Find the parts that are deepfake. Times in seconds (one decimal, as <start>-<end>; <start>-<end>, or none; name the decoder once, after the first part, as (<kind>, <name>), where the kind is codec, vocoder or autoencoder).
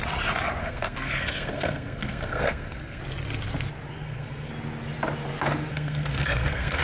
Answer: 0.6-3.0 (codec, SNAC); 4.0-4.5; 5.7-6.8